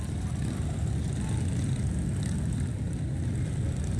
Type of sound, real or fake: real